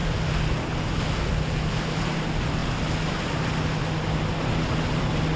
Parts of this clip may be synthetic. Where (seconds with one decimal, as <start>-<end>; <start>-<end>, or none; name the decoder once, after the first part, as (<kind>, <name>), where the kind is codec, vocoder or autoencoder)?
none